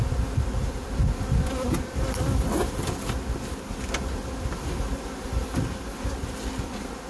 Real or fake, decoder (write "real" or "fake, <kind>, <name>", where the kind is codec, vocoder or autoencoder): real